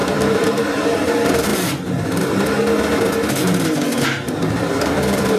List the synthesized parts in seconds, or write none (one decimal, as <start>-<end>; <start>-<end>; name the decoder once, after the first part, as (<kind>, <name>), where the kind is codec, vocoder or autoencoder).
0.0-1.5 (vocoder, BigVGAN v2); 4.5-5.4